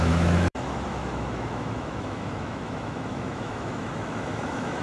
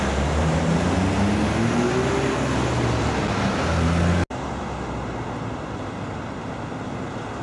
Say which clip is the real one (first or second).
second